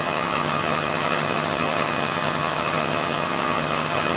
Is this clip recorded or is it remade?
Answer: remade